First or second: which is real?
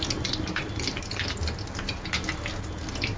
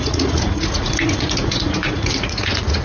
first